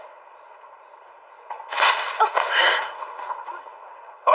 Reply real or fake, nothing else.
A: fake